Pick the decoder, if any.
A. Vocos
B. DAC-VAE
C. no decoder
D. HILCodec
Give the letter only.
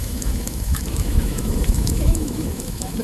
B